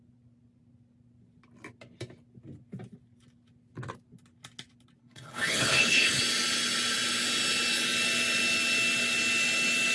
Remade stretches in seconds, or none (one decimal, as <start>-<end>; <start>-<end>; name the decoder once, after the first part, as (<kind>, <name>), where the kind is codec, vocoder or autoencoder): 5.0-6.2 (codec, HILCodec)